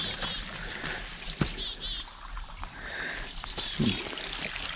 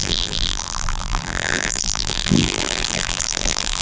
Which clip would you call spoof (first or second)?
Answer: second